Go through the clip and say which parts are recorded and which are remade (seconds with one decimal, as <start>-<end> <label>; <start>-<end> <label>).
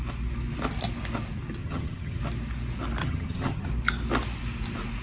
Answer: 0.0-1.6 recorded; 1.6-2.2 remade; 2.2-3.0 recorded; 3.0-3.7 remade; 3.7-5.0 recorded